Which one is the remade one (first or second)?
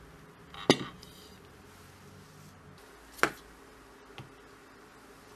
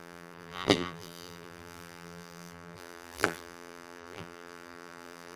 second